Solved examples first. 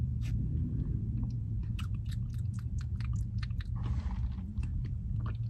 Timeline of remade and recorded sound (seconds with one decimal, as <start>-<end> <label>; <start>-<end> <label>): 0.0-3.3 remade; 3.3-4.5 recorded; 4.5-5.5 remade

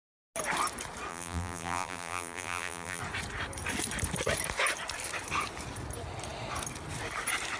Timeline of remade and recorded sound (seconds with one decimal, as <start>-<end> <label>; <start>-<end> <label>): 0.0-1.1 recorded; 1.1-3.0 remade; 3.0-7.6 recorded

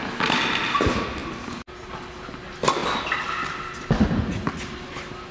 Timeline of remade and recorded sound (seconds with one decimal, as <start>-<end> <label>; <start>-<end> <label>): 0.0-5.3 recorded

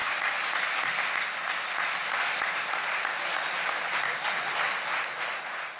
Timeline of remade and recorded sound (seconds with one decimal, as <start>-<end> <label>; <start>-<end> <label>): 0.0-0.8 remade; 0.8-5.8 recorded

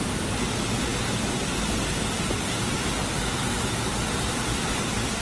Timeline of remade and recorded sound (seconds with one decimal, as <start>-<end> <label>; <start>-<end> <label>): 0.0-4.0 recorded; 4.0-5.2 remade

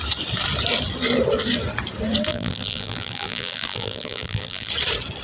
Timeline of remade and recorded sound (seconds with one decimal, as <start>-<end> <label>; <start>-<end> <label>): 0.0-2.3 recorded; 2.3-4.7 remade; 4.7-5.2 recorded